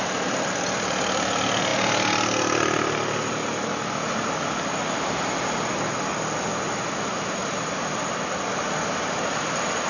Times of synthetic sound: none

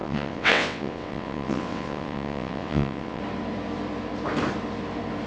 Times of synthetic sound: 0.0-3.2

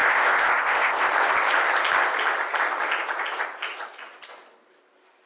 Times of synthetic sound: 0.0-1.1

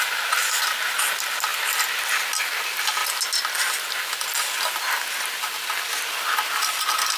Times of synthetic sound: none

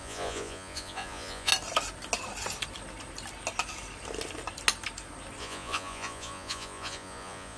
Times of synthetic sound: 0.0-1.5; 5.4-7.6

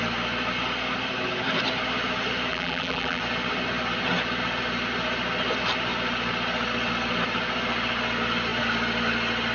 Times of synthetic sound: 2.5-3.2